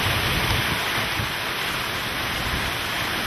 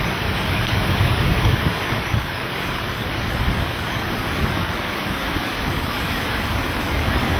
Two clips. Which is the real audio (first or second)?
first